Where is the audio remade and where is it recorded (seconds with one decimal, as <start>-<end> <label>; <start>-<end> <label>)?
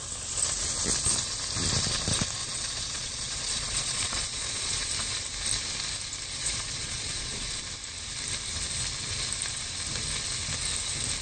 0.0-2.4 recorded; 2.4-4.9 remade; 4.9-6.4 recorded; 6.4-7.6 remade; 7.6-11.2 recorded